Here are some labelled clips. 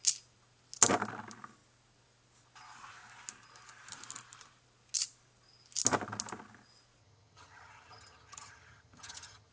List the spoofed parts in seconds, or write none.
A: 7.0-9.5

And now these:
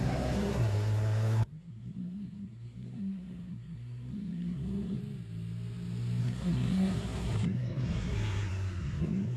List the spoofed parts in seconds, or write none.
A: 0.0-5.0; 6.2-9.4

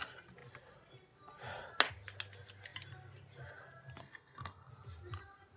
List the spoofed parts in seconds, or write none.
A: 4.0-4.7

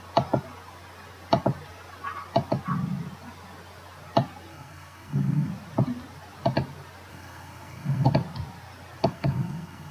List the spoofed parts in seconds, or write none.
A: 4.5-5.5; 7.1-8.1; 9.0-9.9

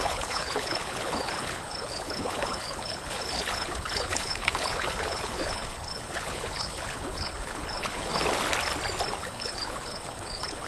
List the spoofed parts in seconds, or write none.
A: 0.0-8.1; 9.2-10.7

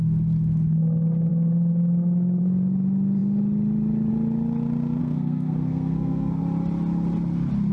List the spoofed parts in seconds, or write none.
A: 5.0-6.4

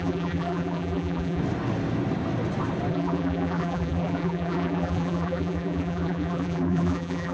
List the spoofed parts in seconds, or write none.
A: 0.0-1.4; 2.9-7.3

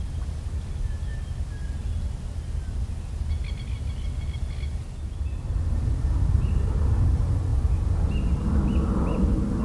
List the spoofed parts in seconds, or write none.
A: none